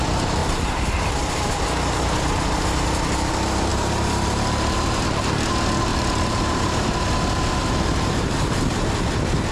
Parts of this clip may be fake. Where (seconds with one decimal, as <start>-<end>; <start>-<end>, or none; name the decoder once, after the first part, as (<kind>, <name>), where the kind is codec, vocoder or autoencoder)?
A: 0.4-1.5 (vocoder, BigVGAN v2); 3.7-5.5; 5.9-6.6; 7.6-8.6